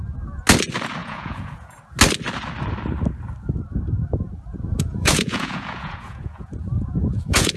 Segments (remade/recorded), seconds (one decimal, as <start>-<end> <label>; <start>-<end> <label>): 0.0-1.0 recorded; 1.0-1.8 remade; 1.8-4.7 recorded; 4.7-7.6 remade